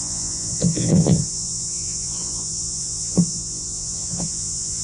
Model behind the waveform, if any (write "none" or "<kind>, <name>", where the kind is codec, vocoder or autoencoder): vocoder, Vocos